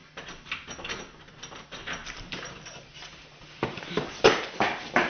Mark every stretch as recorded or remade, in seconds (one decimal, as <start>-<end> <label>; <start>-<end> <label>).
0.0-2.0 recorded; 2.0-5.1 remade

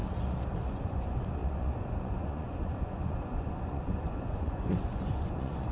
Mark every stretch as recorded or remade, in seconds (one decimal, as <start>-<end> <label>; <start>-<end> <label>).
0.0-0.7 recorded; 0.7-5.7 remade